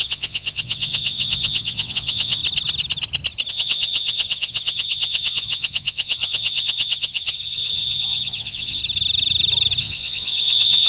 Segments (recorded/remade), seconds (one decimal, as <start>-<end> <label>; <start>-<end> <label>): 0.0-2.4 remade; 2.4-3.5 recorded; 3.5-8.8 remade; 8.8-9.8 recorded; 9.8-10.9 remade